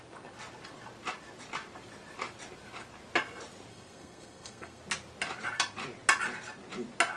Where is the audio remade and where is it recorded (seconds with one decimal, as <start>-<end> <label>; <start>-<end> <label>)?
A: 0.0-3.7 recorded; 3.7-4.8 remade; 4.8-7.2 recorded